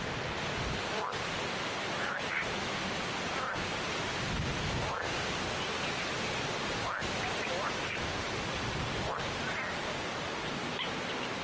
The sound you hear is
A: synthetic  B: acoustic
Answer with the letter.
B